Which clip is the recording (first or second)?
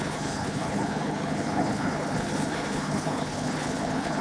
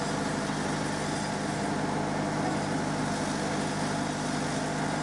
second